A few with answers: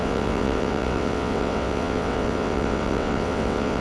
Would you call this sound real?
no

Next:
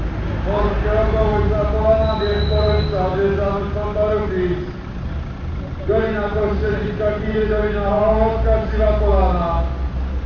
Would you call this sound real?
yes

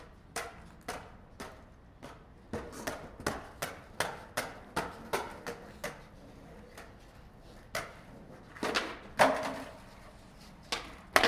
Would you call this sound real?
yes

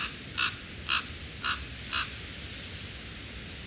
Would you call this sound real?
yes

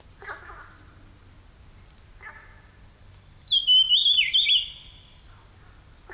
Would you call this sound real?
yes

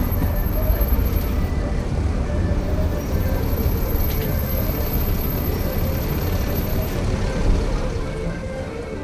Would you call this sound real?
no